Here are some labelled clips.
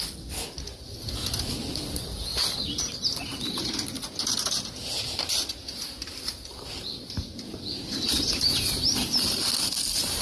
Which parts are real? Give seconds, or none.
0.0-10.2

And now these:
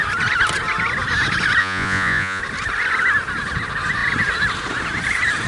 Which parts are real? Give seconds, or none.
0.0-1.6; 2.4-5.5

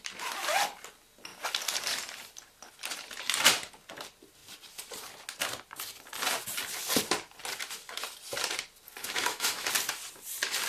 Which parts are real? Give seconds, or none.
0.0-9.0; 9.7-10.7

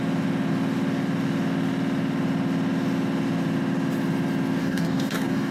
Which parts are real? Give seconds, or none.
0.0-4.6

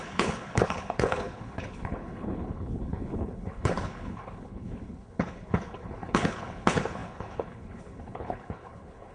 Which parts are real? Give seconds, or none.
none

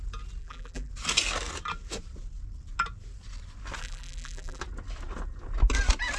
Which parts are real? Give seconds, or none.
0.0-0.4; 0.9-3.8; 4.6-6.2

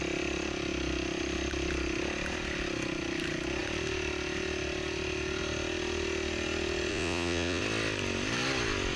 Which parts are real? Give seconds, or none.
0.0-6.9; 7.6-9.0